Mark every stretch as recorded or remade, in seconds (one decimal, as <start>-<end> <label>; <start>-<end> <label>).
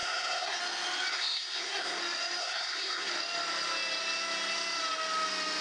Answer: 0.0-0.6 remade; 0.6-1.1 recorded; 1.1-2.0 remade; 2.0-2.4 recorded; 2.4-3.1 remade; 3.1-5.6 recorded